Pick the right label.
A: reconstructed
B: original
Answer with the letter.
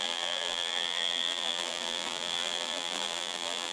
A